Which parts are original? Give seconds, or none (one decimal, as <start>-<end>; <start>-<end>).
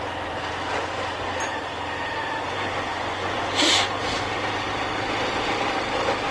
0.0-2.9; 3.4-6.3